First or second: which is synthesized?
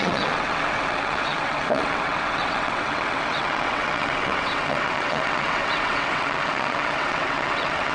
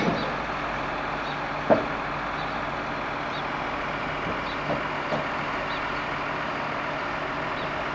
first